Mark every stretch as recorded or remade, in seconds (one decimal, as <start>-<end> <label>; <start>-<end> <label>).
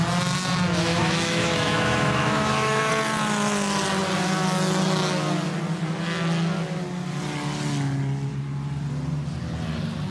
0.0-0.9 recorded; 0.9-2.9 remade; 2.9-10.1 recorded